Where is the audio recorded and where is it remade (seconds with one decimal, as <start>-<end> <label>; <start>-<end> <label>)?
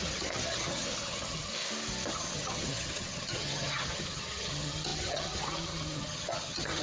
0.0-1.5 remade; 1.5-2.1 recorded; 2.1-6.8 remade